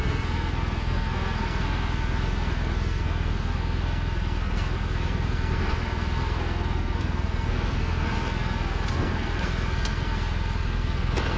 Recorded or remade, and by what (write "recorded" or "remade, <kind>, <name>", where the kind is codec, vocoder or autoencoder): remade, codec, SNAC